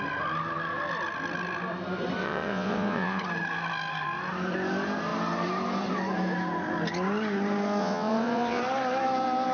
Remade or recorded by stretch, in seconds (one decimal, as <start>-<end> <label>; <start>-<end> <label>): 0.0-2.2 recorded; 2.2-3.2 remade; 3.2-7.8 recorded; 7.8-8.6 remade; 8.6-9.5 recorded